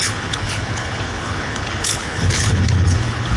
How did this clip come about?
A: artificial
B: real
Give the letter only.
A